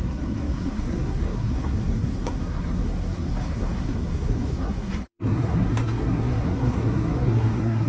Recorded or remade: remade